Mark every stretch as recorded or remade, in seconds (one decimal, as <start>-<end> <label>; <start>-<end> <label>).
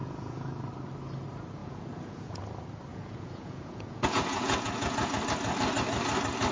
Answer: 0.0-0.7 remade; 0.7-1.6 recorded; 1.6-2.4 remade; 2.4-2.9 recorded; 2.9-5.2 remade; 5.2-6.5 recorded